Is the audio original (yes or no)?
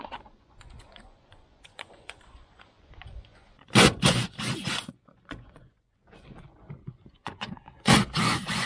no